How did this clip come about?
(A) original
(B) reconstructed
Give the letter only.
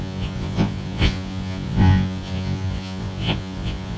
B